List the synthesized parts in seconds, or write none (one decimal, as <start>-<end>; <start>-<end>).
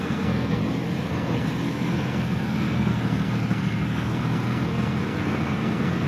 0.0-0.6; 1.1-6.1